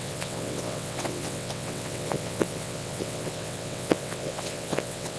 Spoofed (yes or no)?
yes